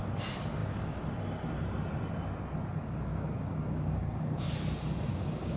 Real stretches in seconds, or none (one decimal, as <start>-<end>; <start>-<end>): 0.0-3.1; 4.5-5.1